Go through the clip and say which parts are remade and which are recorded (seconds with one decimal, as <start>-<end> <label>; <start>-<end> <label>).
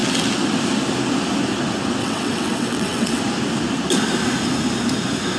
0.0-2.0 recorded; 2.0-3.2 remade; 3.2-5.4 recorded